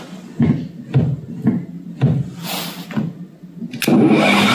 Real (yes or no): yes